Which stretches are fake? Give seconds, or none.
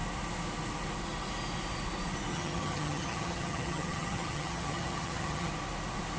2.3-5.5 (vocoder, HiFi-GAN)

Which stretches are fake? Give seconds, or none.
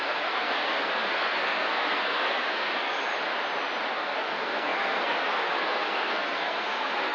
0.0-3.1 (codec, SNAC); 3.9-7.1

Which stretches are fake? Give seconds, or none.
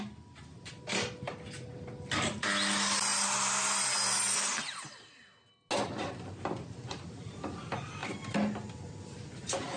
none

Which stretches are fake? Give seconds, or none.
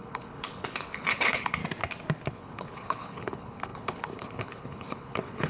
0.0-1.6 (codec, HILCodec); 2.3-5.5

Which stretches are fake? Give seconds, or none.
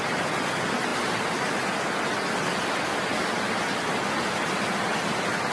none